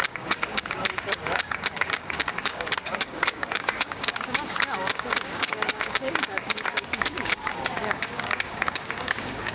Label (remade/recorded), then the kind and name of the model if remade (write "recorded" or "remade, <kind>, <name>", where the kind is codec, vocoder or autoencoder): remade, codec, DAC